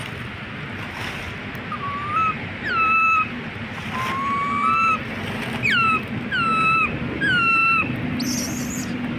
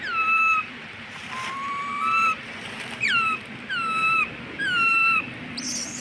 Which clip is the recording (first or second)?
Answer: first